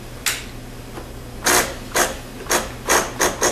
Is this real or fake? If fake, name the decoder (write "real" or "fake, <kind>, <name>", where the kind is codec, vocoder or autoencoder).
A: real